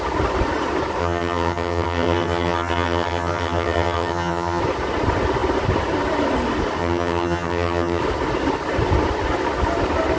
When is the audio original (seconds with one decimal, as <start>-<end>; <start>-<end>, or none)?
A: 0.0-1.0; 4.6-6.8; 8.0-10.2